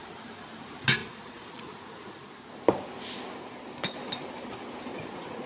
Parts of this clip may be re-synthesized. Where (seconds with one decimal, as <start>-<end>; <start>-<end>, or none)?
1.0-2.3; 4.9-5.5